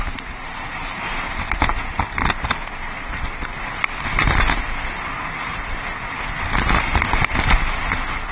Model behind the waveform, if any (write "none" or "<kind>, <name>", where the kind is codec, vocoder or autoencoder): none